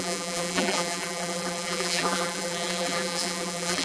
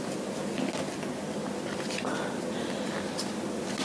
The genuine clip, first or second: second